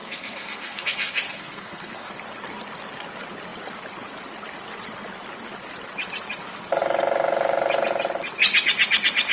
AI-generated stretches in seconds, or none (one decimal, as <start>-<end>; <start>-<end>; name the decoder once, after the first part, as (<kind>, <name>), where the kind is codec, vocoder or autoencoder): 0.0-2.1 (codec, SNAC)